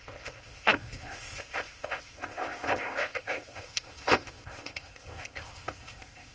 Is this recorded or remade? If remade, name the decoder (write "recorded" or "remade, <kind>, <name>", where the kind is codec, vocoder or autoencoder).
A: remade, codec, ZipCodec